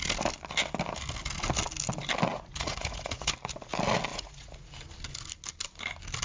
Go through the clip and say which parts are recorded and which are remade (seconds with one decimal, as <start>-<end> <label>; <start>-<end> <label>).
0.0-2.3 recorded; 2.3-3.3 remade; 3.3-4.1 recorded; 4.1-4.7 remade; 4.7-6.2 recorded